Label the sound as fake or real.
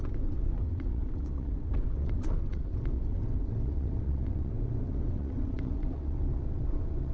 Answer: fake